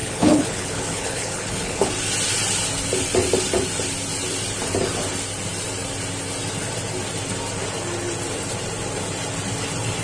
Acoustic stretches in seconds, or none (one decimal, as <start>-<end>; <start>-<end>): 1.9-10.0